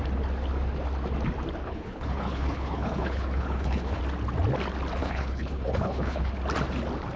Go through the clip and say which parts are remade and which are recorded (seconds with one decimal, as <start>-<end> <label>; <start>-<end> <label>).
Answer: 0.0-1.6 recorded; 1.6-4.0 remade; 4.0-5.0 recorded; 5.0-6.3 remade; 6.3-7.2 recorded